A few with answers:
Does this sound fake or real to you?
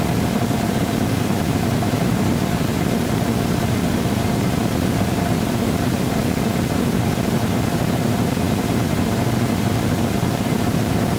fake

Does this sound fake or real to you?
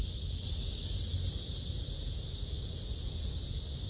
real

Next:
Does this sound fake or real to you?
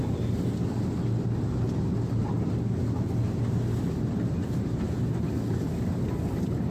real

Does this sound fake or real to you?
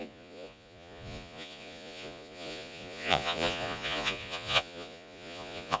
fake